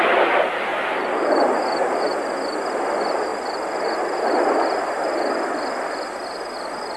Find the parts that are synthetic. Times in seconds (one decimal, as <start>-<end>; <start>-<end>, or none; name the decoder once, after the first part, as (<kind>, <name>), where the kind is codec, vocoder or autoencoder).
0.7-2.0 (vocoder, BigVGAN v2)